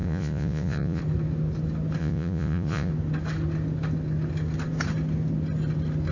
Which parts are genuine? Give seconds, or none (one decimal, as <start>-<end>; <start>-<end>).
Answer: 1.0-2.0; 2.9-6.1